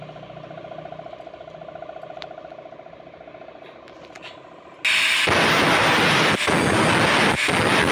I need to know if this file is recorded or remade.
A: recorded